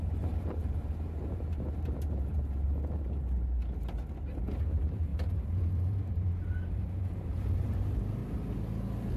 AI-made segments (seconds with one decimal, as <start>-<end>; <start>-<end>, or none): 0.0-3.6; 4.6-8.2